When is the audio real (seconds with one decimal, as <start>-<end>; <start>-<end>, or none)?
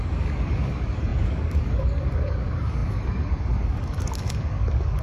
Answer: none